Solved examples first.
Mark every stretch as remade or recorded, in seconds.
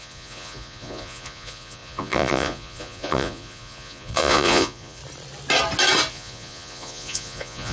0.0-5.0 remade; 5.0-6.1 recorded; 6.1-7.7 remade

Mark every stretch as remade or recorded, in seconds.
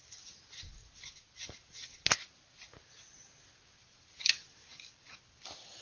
0.0-5.8 recorded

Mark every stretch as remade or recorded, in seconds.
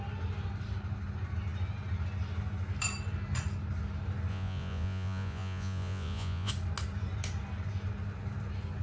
0.0-4.3 recorded; 4.3-6.5 remade; 6.5-8.8 recorded